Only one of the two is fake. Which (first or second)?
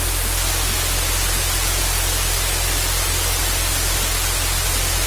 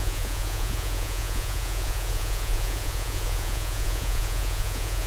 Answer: second